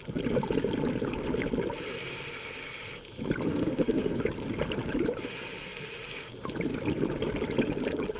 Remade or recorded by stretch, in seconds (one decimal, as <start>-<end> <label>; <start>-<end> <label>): 0.0-3.5 recorded; 3.5-4.2 remade; 4.2-8.2 recorded